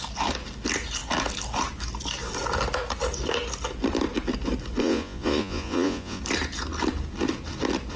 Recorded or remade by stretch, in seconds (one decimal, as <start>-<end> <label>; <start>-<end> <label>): 0.0-4.8 recorded; 4.8-6.2 remade; 6.2-8.0 recorded